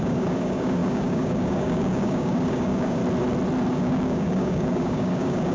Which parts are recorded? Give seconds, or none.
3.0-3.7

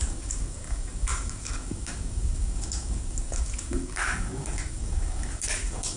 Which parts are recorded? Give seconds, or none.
none

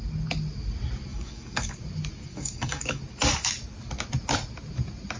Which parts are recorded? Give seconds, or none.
0.0-1.1; 1.8-2.3; 3.0-5.2